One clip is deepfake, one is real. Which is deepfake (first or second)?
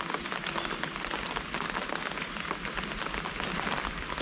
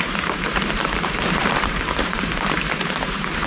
second